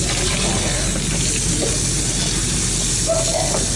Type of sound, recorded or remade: recorded